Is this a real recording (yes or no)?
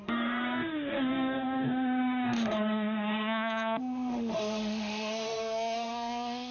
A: no